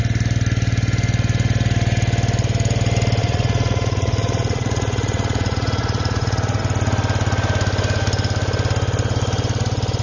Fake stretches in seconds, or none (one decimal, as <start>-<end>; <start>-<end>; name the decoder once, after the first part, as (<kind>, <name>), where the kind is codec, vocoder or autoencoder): 3.2-6.6 (vocoder, Vocos)